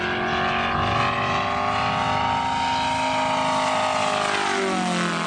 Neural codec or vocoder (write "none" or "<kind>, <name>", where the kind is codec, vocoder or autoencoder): none